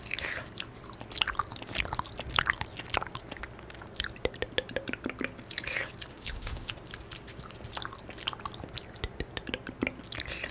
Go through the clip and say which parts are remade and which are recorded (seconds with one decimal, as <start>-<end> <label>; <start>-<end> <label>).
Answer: 0.0-6.1 recorded; 6.1-6.7 remade; 6.7-10.5 recorded